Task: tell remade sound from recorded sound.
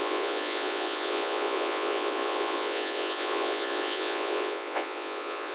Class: remade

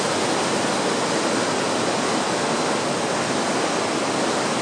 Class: recorded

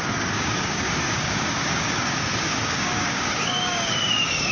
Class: remade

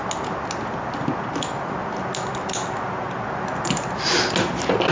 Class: recorded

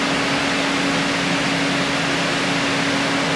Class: recorded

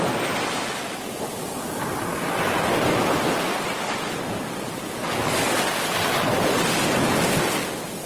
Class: recorded